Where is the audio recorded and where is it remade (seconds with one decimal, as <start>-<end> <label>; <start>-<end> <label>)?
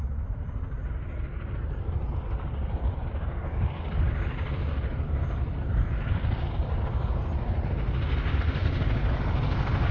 0.0-9.9 recorded